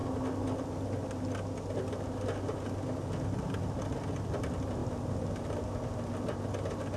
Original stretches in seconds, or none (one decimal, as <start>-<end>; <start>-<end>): 0.0-7.0